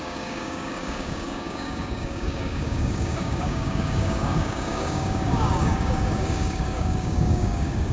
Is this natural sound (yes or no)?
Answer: no